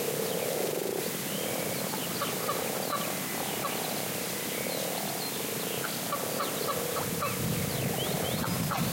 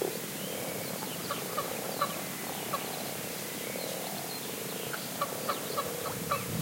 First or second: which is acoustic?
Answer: first